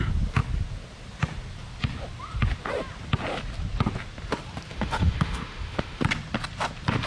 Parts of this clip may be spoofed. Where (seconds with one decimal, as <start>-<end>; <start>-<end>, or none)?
4.7-6.0